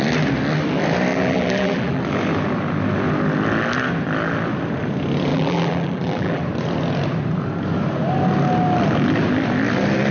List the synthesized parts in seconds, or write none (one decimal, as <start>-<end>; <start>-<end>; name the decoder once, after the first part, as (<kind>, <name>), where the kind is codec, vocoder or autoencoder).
1.1-2.0 (vocoder, BigVGAN v2); 5.3-6.4